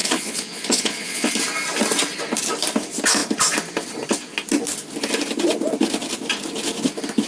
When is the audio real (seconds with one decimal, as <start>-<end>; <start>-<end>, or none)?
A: 1.3-7.3